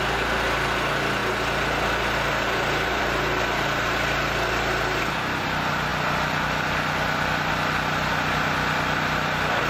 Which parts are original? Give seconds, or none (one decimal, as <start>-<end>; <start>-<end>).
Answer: 0.0-9.7